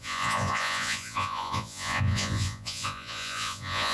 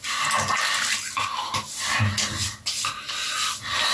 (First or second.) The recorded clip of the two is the second